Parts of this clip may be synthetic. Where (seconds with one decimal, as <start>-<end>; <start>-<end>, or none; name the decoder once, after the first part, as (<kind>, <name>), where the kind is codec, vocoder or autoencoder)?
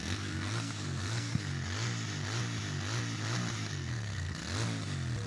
0.0-1.5 (codec, SNAC); 3.7-4.4